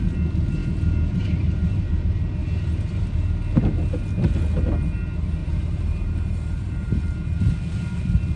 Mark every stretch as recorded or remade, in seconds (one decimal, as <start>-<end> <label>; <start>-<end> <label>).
0.0-5.4 recorded; 5.4-7.0 remade; 7.0-8.4 recorded

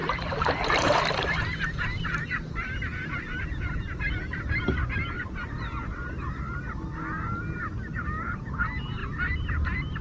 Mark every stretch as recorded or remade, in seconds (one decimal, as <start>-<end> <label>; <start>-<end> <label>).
0.0-2.1 remade; 2.1-10.0 recorded